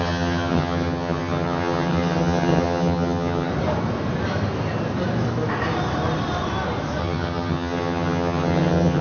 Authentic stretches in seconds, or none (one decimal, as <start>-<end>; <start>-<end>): 3.5-7.0